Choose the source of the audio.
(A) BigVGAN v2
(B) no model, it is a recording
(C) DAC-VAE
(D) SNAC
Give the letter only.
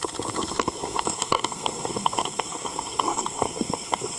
D